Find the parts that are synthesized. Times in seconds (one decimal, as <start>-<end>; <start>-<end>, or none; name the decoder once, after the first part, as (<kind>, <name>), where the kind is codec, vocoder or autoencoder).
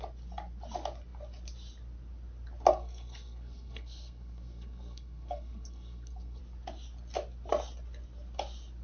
2.7-6.4 (codec, SNAC)